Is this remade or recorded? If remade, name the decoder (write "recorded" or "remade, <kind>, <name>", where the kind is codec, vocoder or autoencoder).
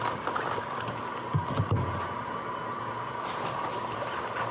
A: recorded